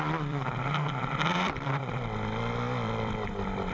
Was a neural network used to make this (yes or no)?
yes